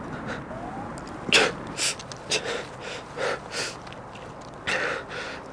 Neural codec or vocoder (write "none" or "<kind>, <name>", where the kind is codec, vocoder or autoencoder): none